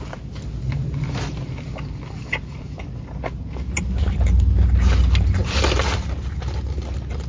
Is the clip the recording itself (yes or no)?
yes